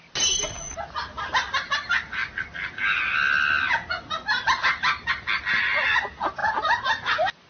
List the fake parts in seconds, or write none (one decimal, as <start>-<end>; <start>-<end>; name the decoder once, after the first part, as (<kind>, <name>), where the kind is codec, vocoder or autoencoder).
none